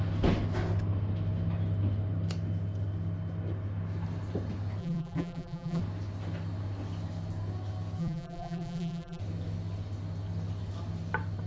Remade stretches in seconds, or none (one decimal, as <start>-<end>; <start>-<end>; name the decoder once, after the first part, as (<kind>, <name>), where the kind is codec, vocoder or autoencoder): 4.8-5.8 (vocoder, BigVGAN v2); 8.0-9.2